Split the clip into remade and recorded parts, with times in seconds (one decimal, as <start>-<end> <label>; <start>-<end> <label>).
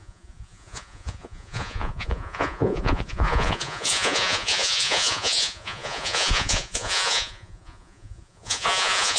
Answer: 0.0-9.2 remade